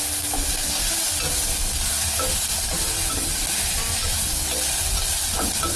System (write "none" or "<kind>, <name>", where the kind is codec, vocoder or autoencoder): none